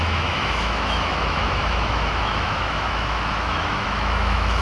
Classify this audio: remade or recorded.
remade